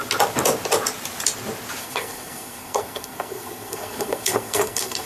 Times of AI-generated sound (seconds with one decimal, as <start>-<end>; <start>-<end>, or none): 1.8-5.1